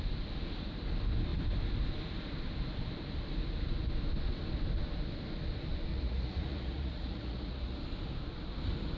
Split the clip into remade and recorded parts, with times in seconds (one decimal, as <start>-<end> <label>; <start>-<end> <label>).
0.0-5.9 recorded; 5.9-7.8 remade; 7.8-9.0 recorded